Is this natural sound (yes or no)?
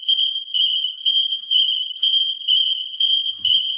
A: no